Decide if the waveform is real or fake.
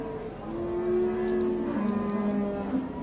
real